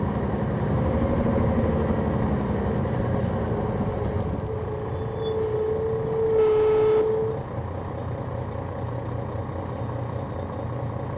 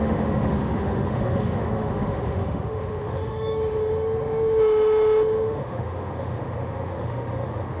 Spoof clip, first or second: second